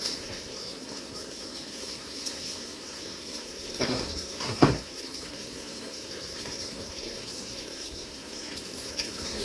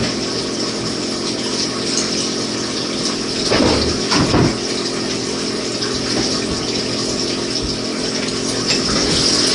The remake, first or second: first